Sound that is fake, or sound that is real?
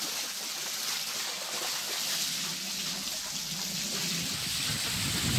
real